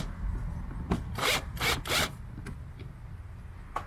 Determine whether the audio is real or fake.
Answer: real